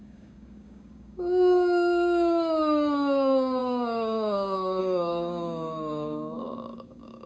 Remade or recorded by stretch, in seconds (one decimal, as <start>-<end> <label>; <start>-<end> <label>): 0.0-7.3 remade